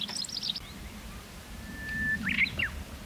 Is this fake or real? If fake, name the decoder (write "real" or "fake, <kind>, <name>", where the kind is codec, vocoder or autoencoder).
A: real